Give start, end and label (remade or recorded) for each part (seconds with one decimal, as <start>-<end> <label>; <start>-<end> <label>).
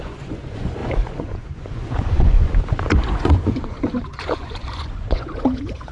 0.0-5.9 remade